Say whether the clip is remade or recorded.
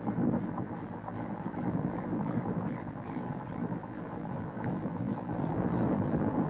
remade